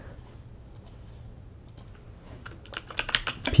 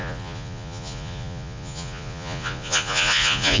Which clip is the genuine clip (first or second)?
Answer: first